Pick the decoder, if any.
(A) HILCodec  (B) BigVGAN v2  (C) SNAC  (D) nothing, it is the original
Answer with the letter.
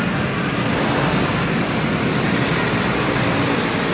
D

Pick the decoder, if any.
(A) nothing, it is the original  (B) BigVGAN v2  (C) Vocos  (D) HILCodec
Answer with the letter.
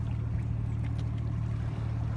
A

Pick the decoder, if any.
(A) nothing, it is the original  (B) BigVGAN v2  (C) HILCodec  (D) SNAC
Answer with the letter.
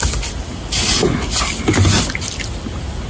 A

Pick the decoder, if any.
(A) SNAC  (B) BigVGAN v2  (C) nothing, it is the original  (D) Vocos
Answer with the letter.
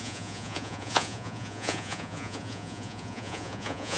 D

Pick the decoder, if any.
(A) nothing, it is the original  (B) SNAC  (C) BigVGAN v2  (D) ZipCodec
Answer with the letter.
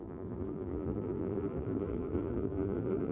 C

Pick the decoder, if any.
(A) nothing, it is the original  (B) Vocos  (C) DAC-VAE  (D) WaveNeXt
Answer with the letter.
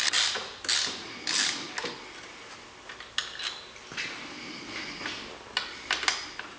A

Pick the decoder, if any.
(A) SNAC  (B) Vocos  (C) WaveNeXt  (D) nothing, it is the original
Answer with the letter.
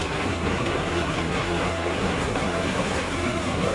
A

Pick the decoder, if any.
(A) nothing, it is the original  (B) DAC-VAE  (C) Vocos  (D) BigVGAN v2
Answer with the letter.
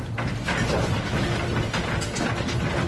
A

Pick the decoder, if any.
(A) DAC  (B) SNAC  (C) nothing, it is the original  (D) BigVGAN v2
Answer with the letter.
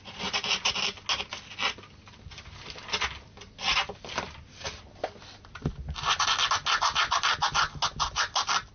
C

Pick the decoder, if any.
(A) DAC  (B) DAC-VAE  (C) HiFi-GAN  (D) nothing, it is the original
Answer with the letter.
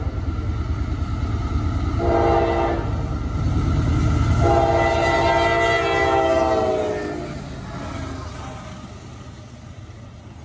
D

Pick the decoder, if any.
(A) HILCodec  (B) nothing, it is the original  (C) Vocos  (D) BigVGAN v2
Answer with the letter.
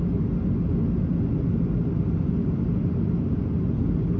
B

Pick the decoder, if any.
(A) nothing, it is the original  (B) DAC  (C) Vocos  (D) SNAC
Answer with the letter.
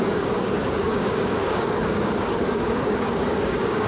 B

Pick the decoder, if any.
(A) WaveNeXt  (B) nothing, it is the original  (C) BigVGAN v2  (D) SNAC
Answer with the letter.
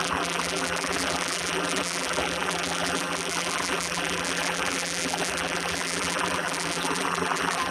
C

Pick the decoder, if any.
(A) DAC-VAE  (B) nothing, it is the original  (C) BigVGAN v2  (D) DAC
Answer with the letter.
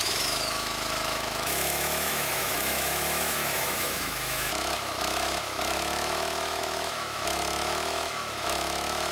A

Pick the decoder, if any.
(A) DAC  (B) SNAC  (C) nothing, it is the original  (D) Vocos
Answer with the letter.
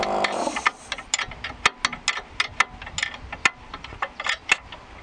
C